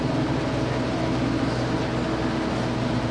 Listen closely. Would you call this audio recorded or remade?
recorded